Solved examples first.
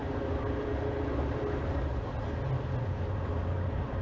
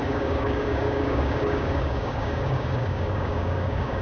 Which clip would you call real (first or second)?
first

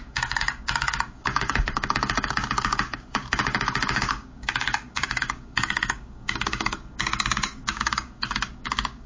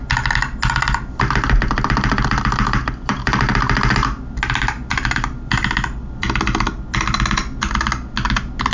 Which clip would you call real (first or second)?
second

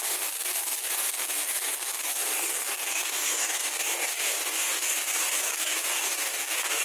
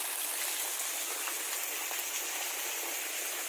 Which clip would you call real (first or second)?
second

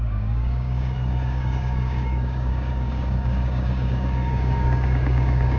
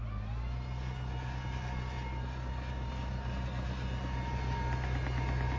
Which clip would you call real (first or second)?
second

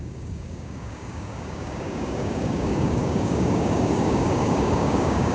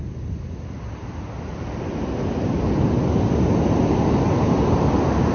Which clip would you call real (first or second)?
second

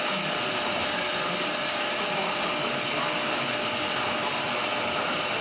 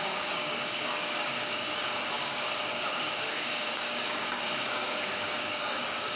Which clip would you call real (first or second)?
first